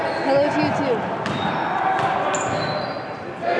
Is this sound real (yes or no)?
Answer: yes